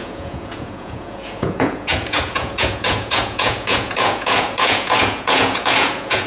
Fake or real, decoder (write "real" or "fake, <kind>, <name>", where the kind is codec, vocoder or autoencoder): fake, vocoder, Vocos